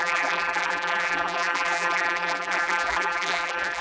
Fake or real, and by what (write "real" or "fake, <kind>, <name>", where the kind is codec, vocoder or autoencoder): fake, vocoder, BigVGAN v2